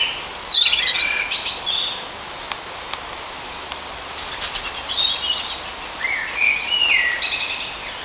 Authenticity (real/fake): real